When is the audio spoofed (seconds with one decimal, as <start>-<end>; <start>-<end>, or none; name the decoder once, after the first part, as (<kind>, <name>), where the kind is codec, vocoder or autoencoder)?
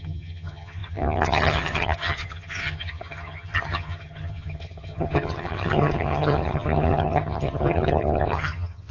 0.0-8.9 (vocoder, HiFi-GAN)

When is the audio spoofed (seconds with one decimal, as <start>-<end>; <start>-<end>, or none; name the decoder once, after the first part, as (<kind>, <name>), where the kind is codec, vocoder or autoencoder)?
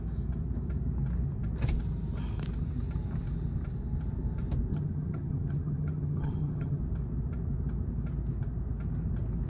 4.7-6.8 (vocoder, HiFi-GAN)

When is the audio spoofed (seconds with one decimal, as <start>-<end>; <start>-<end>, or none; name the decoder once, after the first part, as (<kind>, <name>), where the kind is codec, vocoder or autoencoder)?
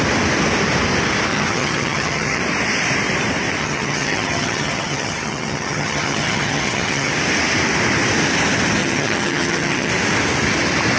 1.3-2.4 (vocoder, HiFi-GAN); 3.6-7.1; 8.8-9.9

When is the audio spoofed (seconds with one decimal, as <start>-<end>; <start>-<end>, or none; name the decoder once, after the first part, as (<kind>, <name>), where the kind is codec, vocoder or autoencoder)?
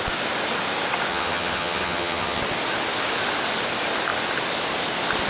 1.1-2.4 (vocoder, HiFi-GAN)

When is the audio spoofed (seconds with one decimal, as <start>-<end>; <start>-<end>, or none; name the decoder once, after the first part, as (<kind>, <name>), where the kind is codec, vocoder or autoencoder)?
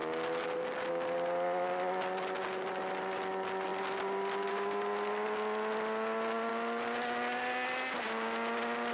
none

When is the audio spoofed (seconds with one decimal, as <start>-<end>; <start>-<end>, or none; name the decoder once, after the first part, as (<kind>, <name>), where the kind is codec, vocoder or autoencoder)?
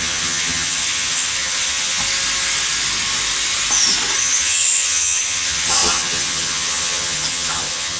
0.0-2.0 (vocoder, HiFi-GAN); 4.2-8.0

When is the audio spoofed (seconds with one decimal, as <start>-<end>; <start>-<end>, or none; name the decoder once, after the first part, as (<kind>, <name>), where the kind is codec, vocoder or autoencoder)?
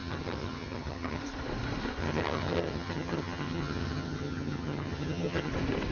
0.0-1.2 (vocoder, HiFi-GAN); 2.0-5.5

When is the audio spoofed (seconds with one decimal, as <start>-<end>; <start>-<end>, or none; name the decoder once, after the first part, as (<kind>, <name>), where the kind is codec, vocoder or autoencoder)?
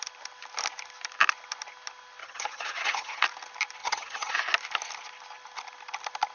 2.2-3.2 (vocoder, HiFi-GAN); 3.8-4.3